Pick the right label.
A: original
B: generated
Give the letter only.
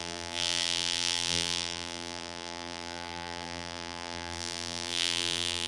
B